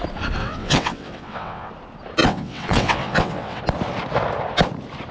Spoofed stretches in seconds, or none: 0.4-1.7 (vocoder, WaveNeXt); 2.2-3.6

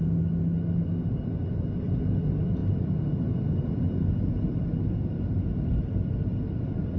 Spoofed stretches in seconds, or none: none

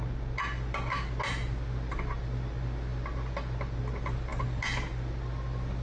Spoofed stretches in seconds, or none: none

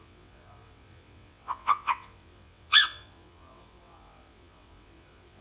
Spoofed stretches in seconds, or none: 0.0-5.4 (vocoder, WaveNeXt)

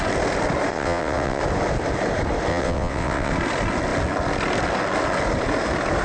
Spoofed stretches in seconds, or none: 0.7-1.4 (vocoder, WaveNeXt); 2.5-3.3

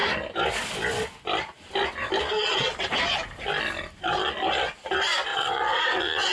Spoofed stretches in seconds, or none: 5.3-6.3 (vocoder, WaveNeXt)